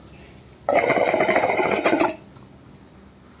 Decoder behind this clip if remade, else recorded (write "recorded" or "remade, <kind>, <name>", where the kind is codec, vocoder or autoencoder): recorded